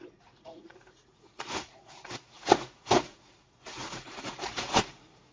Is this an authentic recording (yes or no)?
no